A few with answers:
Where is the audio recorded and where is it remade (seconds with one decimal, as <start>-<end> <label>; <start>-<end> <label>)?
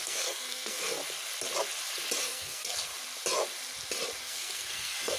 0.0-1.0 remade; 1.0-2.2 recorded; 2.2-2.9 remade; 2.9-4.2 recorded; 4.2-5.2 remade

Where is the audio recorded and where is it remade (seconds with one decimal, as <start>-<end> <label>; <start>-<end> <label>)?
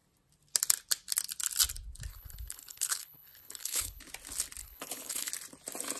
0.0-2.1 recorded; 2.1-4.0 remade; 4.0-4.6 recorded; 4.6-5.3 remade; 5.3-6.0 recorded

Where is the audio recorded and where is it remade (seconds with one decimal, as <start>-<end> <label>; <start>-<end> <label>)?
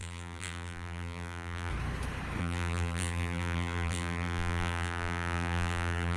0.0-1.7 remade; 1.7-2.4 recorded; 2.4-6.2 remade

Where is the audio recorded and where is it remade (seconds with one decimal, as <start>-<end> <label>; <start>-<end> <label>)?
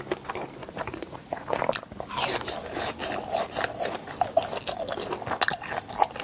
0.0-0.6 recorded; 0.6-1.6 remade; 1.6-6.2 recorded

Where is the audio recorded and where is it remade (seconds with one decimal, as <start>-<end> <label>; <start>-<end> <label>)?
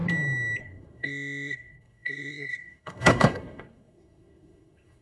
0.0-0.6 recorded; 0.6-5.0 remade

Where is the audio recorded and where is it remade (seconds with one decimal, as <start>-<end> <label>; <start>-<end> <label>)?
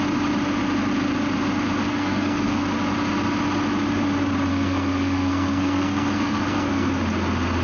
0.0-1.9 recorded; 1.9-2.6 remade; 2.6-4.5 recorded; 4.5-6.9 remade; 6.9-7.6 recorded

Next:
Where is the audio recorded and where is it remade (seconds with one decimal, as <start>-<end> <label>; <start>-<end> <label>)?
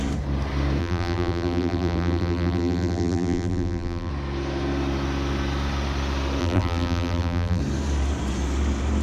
0.0-0.8 recorded; 0.8-4.1 remade; 4.1-6.4 recorded; 6.4-7.6 remade; 7.6-9.0 recorded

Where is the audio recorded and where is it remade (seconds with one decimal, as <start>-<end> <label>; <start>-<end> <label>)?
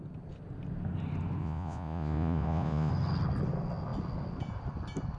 0.0-1.4 recorded; 1.4-2.9 remade; 2.9-5.2 recorded